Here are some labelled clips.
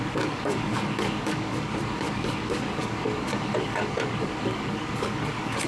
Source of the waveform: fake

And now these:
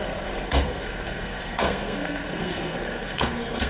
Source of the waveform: fake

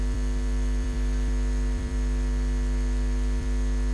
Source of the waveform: fake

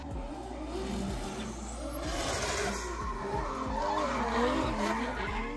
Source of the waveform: real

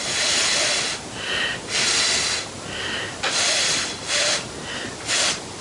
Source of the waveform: real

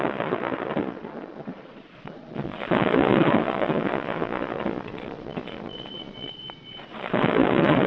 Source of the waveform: fake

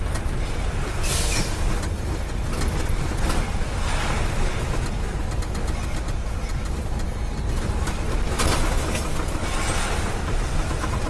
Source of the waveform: real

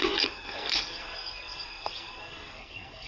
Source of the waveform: fake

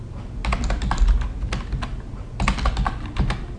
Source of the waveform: real